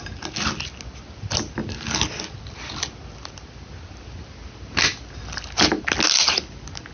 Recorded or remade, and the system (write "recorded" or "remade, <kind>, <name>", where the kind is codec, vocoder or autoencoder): recorded